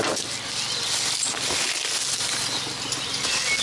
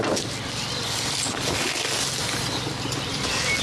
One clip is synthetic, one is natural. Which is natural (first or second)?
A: first